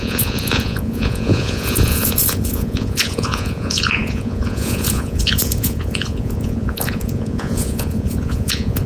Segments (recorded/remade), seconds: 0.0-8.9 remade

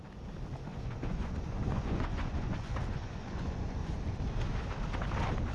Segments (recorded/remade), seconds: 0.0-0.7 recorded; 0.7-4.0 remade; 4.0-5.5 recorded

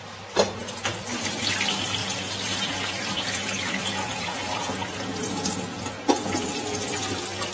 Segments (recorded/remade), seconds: 0.0-2.0 recorded; 2.0-6.5 remade; 6.5-7.5 recorded